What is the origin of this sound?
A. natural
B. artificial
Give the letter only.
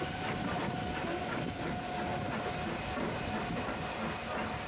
A